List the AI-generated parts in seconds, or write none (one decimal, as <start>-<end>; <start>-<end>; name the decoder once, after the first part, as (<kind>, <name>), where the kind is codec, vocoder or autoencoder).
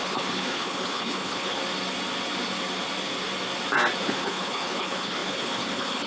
0.0-1.6 (codec, HILCodec); 4.0-6.1